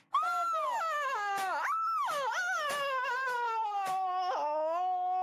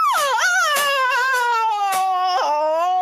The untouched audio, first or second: first